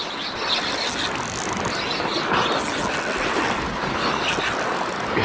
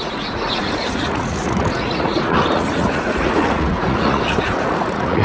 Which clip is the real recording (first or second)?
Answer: first